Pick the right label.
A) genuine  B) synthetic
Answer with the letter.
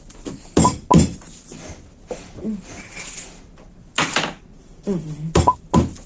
A